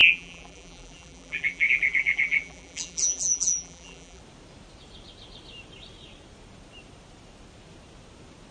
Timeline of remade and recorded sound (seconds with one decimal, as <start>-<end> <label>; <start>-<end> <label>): 0.0-4.2 remade; 4.2-8.5 recorded